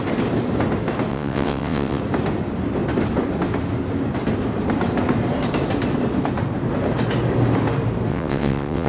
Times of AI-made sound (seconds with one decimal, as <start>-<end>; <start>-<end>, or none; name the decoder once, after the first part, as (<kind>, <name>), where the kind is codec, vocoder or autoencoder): 1.1-2.0 (vocoder, WaveNeXt); 8.1-8.9